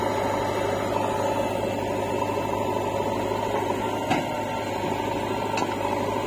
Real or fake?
real